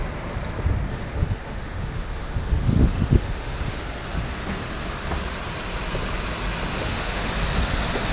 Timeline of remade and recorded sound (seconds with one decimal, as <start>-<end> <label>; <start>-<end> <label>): 0.0-0.9 recorded; 0.9-3.8 remade; 3.8-6.7 recorded; 6.7-7.3 remade; 7.3-8.1 recorded